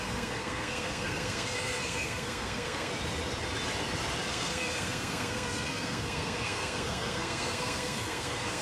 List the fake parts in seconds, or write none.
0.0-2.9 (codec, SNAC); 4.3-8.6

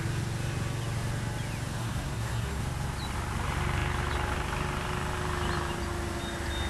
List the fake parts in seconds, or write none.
1.8-2.6 (codec, SNAC)

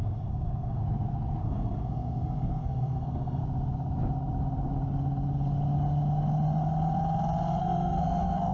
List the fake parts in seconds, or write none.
0.0-0.8 (codec, SNAC); 1.4-3.4; 7.6-8.5

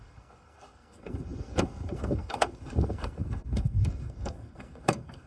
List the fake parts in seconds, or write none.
0.0-5.3 (codec, SNAC)

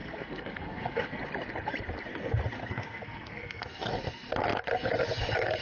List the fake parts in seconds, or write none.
0.0-1.2 (codec, SNAC); 2.6-3.9

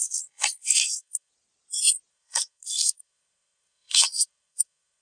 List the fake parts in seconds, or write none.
0.0-1.3 (codec, SNAC); 2.1-5.0